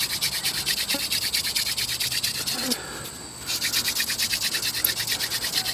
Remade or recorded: recorded